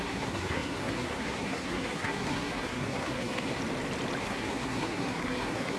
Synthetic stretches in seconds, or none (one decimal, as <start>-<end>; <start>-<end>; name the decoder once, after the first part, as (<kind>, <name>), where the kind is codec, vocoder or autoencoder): 0.0-3.6 (codec, SNAC); 4.2-5.8